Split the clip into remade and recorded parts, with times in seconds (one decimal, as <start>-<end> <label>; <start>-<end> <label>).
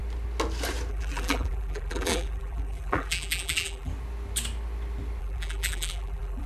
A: 0.0-0.9 recorded; 0.9-3.9 remade; 3.9-5.2 recorded; 5.2-6.5 remade